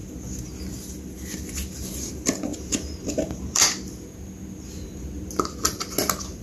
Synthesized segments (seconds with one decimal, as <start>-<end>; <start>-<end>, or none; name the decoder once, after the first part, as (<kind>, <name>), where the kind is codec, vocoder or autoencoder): none